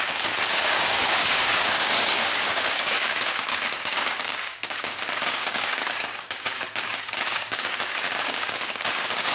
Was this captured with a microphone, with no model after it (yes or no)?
no